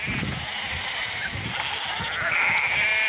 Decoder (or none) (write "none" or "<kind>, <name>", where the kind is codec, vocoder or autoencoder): none